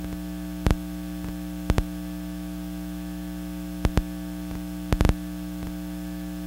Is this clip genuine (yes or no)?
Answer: yes